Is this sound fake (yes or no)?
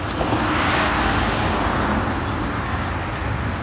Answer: no